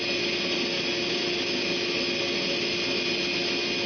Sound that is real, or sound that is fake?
real